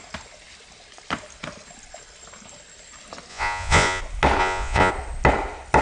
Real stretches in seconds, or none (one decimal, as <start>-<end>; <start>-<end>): 0.0-3.3; 4.0-4.4; 4.9-5.8

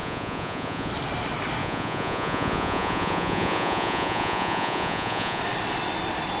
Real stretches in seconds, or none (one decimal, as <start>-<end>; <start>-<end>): 0.9-1.6; 5.4-6.4